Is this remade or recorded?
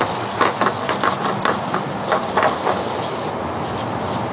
recorded